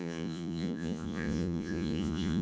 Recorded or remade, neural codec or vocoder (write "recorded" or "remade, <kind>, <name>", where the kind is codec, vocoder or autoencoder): remade, vocoder, Vocos